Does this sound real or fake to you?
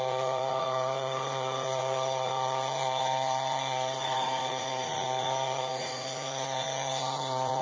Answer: fake